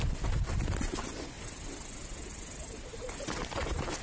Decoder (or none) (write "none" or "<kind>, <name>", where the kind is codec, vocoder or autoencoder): vocoder, BigVGAN v2